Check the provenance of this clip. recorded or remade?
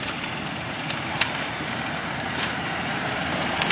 remade